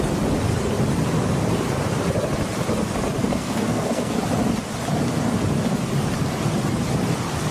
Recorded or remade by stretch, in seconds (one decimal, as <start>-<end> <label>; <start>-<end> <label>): 0.0-3.2 recorded; 3.2-4.2 remade; 4.2-7.5 recorded